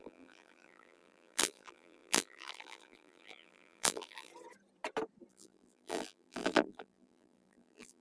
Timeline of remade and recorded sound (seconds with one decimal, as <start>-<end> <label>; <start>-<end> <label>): 0.0-4.3 remade; 4.3-5.3 recorded; 5.3-8.0 remade